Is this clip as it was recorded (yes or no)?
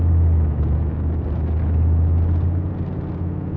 yes